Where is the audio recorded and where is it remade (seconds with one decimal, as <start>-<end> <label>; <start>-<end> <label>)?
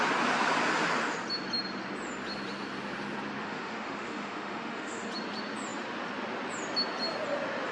0.0-3.4 recorded; 3.4-5.1 remade; 5.1-7.7 recorded